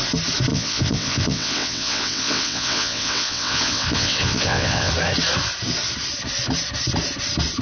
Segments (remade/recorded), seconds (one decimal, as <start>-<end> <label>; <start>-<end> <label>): 0.0-0.5 recorded; 0.5-4.9 remade; 4.9-7.6 recorded